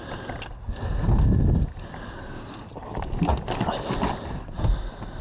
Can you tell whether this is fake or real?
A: real